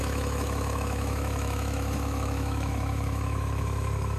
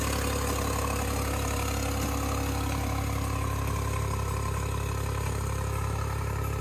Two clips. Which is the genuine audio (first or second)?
second